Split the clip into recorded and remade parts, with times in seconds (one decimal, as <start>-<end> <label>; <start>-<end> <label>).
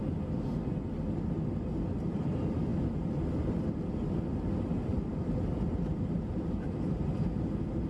0.0-4.9 recorded; 4.9-7.2 remade; 7.2-7.9 recorded